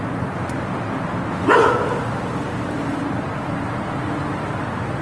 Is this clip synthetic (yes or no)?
no